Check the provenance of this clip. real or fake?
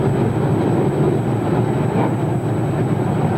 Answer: real